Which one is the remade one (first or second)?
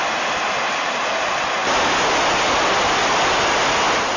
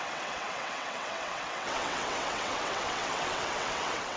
second